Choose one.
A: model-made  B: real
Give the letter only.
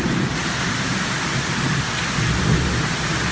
B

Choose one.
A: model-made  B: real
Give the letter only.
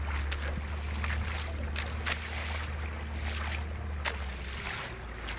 B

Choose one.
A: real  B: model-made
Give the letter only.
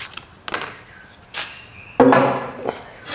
A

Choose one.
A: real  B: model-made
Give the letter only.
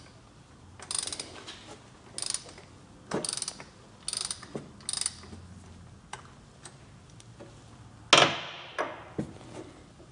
A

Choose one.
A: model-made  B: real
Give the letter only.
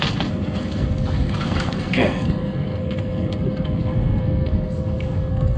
A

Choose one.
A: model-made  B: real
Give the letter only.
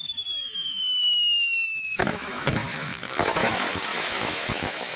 A